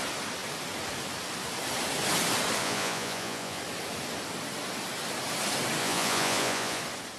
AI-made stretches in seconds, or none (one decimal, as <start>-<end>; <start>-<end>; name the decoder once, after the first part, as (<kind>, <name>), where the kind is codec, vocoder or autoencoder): 2.6-3.6 (vocoder, Vocos); 5.8-6.8